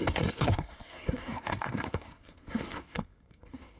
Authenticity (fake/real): fake